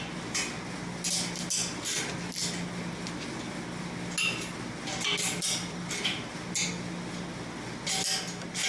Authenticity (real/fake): real